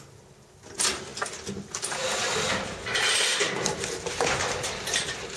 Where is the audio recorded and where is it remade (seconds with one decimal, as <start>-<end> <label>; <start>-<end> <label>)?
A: 0.0-5.4 recorded